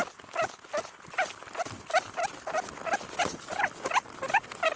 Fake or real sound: real